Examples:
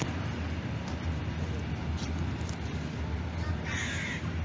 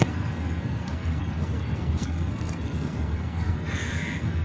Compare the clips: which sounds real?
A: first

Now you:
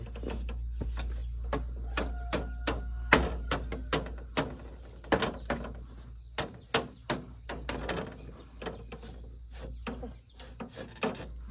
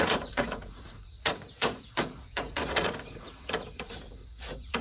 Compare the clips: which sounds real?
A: first